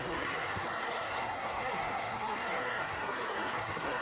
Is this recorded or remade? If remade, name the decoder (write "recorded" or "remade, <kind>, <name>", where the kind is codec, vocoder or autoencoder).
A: remade, codec, SNAC